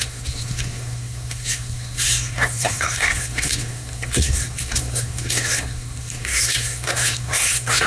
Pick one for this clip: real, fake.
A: fake